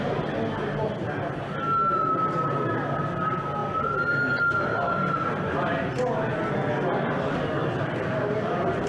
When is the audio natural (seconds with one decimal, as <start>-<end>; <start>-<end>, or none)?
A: 0.0-8.9